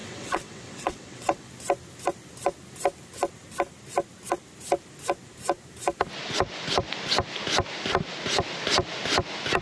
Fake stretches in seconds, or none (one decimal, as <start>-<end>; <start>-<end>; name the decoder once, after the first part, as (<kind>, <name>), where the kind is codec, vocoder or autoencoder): 0.0-1.5 (vocoder, WaveNeXt)